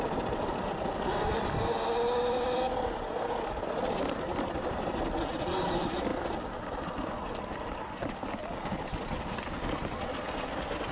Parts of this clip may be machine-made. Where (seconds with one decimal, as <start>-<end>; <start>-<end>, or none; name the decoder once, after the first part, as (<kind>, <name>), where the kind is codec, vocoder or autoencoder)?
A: none